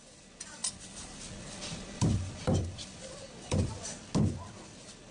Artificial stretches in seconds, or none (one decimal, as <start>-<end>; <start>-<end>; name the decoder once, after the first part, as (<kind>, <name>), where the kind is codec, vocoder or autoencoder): 0.6-3.7 (vocoder, BigVGAN v2)